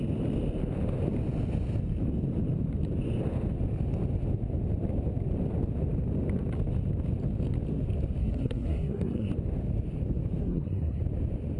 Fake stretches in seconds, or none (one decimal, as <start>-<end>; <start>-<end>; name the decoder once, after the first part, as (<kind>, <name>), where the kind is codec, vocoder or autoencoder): 8.2-9.3 (codec, SNAC); 10.4-11.0